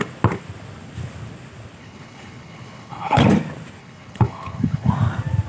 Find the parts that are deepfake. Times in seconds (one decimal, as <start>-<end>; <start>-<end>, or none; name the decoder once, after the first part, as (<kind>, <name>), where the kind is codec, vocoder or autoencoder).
1.8-3.2 (codec, HILCodec); 3.8-4.9